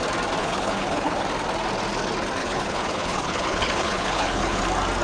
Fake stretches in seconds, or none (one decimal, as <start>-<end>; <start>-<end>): 0.4-1.2; 2.4-4.6